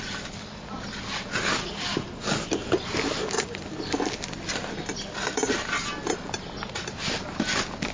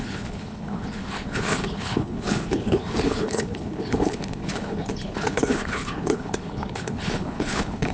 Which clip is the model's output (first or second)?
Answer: second